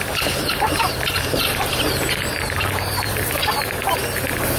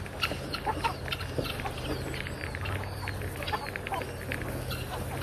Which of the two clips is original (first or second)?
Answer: second